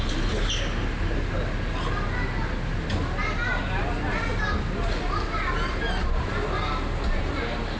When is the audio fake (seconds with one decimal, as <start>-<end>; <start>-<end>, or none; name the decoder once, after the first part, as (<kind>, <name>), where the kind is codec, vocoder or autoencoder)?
none